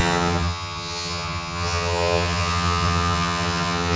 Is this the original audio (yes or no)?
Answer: no